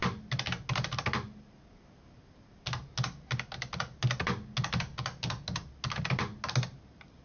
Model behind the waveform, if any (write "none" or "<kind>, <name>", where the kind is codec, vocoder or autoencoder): none